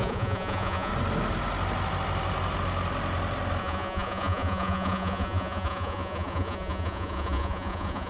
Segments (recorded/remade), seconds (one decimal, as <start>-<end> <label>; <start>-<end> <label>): 0.0-0.9 remade; 0.9-3.6 recorded; 3.6-8.1 remade